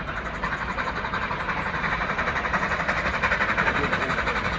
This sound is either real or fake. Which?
fake